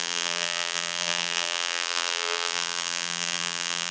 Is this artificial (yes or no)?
yes